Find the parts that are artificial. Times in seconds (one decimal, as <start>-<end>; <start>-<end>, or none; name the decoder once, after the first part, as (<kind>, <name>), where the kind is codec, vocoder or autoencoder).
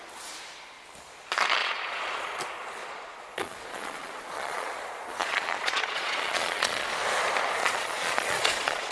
1.6-2.4 (vocoder, Vocos); 2.8-6.9; 7.6-8.9